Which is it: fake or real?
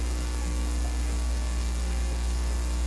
fake